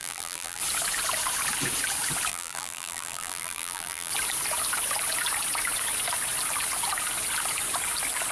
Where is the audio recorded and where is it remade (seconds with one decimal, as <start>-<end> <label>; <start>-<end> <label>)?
0.0-0.6 remade; 0.6-2.3 recorded; 2.3-4.1 remade; 4.1-8.3 recorded